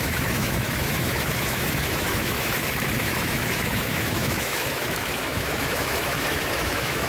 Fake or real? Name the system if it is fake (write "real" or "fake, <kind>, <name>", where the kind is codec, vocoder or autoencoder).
fake, autoencoder, DAC-VAE